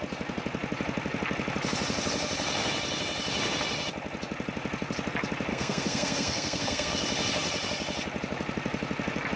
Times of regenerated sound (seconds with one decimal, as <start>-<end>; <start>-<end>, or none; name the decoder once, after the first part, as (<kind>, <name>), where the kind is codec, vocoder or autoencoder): 5.5-6.9 (codec, SNAC)